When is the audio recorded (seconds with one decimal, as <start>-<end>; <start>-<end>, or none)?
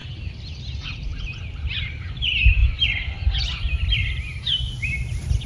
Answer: 0.6-1.1; 1.9-2.6